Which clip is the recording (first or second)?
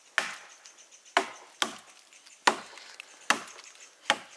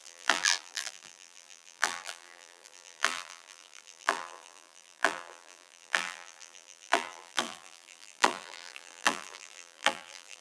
first